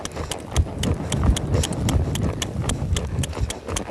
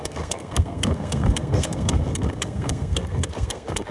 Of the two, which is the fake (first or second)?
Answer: second